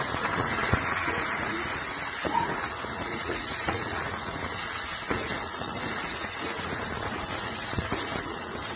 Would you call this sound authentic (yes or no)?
no